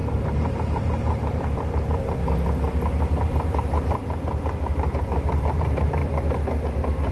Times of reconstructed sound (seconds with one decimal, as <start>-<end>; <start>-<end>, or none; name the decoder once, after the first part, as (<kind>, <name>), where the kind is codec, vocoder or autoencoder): 0.0-2.2 (vocoder, BigVGAN v2); 3.0-6.0